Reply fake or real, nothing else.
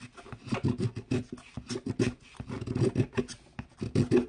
real